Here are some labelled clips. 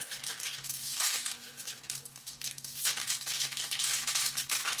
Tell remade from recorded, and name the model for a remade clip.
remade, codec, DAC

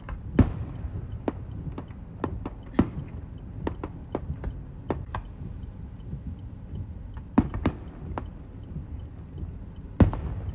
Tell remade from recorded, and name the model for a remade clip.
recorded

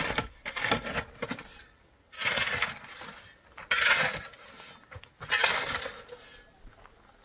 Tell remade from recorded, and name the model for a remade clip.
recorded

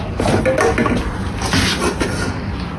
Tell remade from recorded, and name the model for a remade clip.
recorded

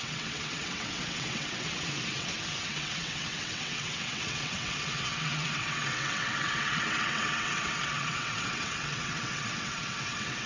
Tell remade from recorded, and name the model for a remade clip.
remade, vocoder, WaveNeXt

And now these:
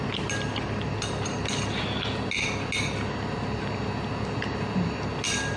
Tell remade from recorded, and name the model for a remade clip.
recorded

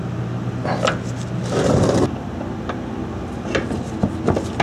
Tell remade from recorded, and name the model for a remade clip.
recorded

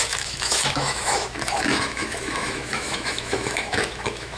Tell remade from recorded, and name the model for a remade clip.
remade, autoencoder, DAC-VAE